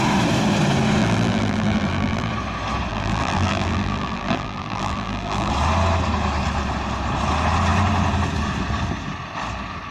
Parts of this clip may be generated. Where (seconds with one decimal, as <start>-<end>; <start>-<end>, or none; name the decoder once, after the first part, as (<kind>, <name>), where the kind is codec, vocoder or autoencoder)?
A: 1.0-2.3 (vocoder, BigVGAN v2); 2.9-5.5